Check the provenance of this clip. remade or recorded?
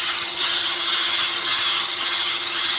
remade